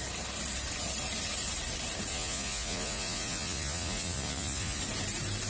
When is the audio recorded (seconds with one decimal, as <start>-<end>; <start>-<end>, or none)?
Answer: 0.0-2.1; 4.8-5.5